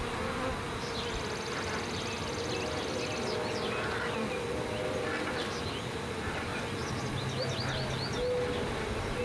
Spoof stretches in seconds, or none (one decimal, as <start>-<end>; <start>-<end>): none